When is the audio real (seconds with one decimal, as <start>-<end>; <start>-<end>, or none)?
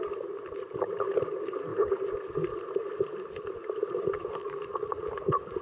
0.0-4.4